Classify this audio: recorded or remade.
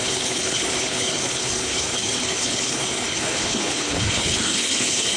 remade